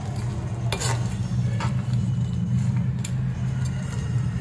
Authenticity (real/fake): real